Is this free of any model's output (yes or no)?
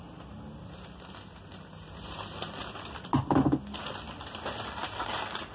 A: yes